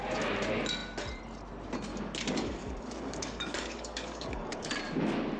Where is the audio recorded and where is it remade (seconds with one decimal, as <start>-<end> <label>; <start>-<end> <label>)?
0.0-1.9 recorded; 1.9-4.7 remade; 4.7-5.4 recorded